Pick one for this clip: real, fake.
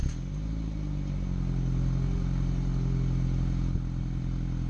real